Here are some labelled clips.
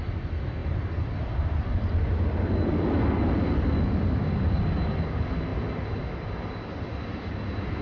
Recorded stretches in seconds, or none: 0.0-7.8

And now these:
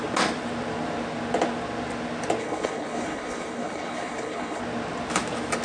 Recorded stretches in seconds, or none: 0.0-2.4; 4.6-5.6

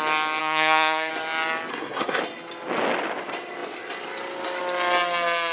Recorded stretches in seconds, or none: 0.0-0.4; 1.1-1.7; 2.2-5.5

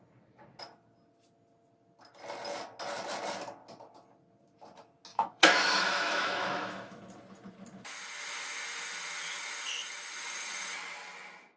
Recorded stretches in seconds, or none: 0.0-5.1; 7.0-11.6

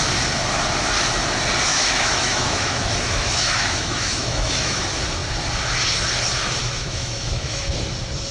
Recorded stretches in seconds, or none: 0.0-1.7; 4.8-6.6; 7.6-8.3

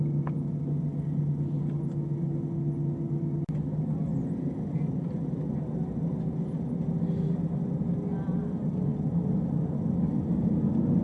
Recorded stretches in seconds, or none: 0.0-11.0

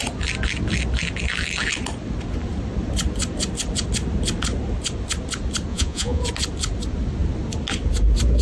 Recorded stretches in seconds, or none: 0.0-5.7; 6.2-8.4

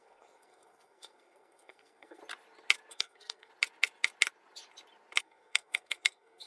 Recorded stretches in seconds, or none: 2.2-2.9; 3.5-5.2